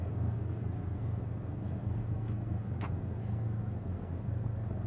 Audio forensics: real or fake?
fake